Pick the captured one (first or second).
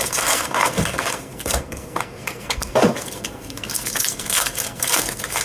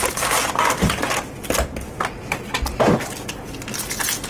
second